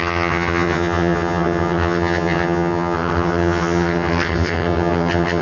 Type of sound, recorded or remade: remade